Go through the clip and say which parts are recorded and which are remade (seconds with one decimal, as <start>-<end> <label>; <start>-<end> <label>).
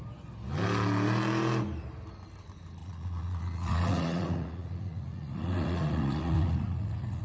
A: 0.0-2.8 recorded; 2.8-7.2 remade